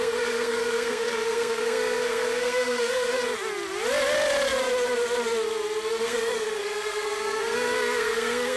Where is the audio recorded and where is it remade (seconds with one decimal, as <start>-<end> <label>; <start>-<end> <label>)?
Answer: 0.0-3.1 remade; 3.1-6.0 recorded; 6.0-8.6 remade